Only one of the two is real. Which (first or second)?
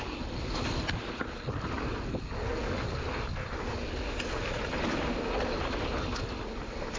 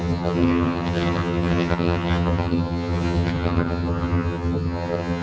first